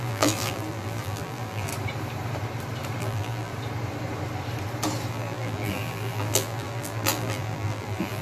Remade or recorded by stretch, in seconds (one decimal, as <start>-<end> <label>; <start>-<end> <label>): 0.0-1.7 remade; 1.7-3.0 recorded; 3.0-3.5 remade; 3.5-5.1 recorded; 5.1-8.2 remade